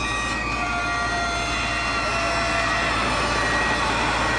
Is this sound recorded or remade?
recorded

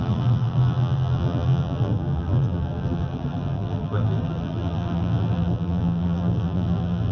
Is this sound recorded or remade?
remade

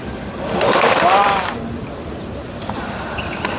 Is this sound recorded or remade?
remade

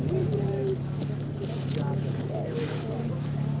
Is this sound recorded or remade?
remade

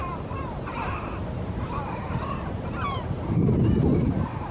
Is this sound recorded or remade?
remade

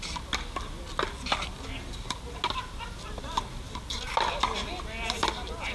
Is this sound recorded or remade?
recorded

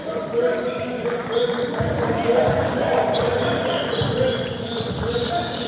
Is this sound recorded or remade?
remade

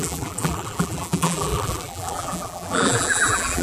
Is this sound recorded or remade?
remade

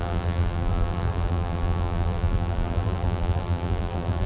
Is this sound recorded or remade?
remade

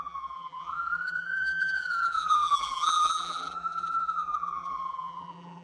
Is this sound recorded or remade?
remade